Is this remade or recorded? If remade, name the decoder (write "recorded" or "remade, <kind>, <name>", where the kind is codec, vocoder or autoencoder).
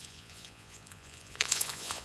remade, vocoder, Vocos